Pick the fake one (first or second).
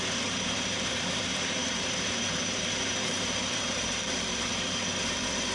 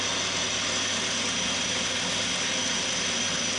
first